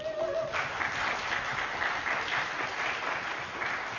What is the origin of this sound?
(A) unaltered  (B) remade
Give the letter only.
A